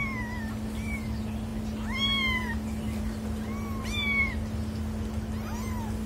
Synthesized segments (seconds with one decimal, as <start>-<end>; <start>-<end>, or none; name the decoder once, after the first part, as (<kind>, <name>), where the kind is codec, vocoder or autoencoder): none